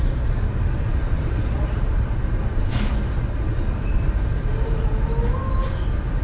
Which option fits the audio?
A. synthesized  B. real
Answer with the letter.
B